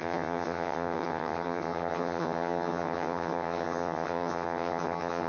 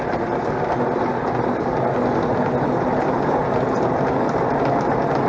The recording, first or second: second